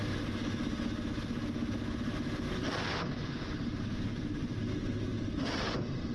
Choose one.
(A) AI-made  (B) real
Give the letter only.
B